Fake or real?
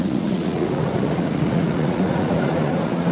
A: fake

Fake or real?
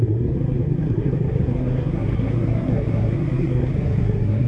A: fake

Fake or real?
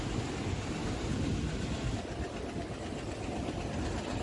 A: real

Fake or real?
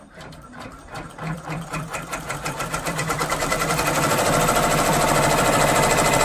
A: fake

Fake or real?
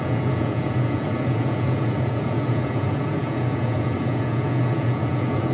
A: fake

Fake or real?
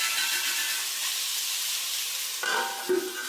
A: real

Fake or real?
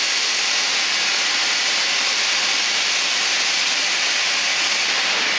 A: fake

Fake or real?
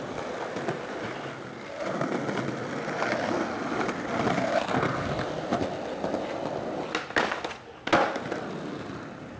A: real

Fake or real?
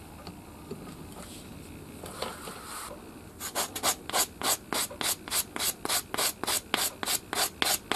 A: real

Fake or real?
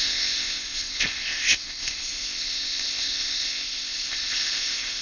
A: fake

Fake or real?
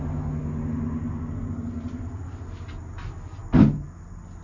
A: real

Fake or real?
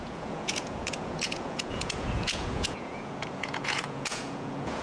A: fake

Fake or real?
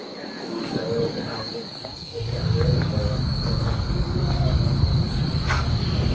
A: fake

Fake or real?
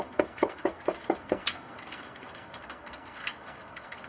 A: fake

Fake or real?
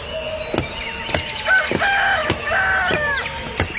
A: real